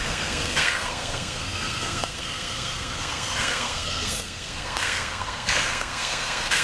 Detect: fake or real fake